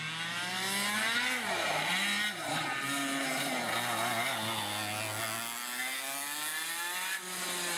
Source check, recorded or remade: recorded